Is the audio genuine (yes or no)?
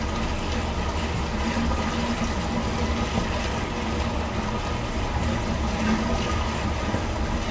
yes